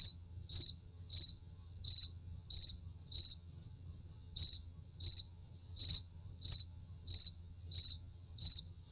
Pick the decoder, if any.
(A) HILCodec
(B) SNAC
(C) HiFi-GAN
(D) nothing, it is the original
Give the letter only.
C